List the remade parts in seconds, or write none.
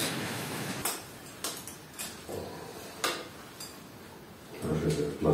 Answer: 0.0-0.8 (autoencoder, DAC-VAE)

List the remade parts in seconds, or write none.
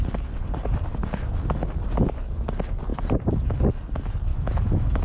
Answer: 4.3-5.0 (autoencoder, DAC-VAE)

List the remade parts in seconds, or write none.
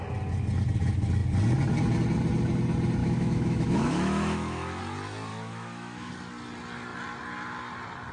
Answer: 3.0-4.8 (autoencoder, DAC-VAE); 5.3-6.1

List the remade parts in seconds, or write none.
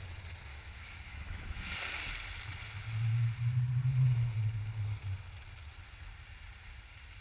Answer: 0.5-1.7 (autoencoder, DAC-VAE)